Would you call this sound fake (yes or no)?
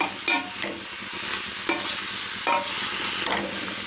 no